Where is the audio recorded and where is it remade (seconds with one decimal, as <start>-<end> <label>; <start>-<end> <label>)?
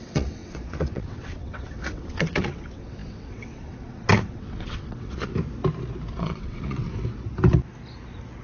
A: 0.0-5.3 remade; 5.3-6.1 recorded; 6.1-6.9 remade; 6.9-8.4 recorded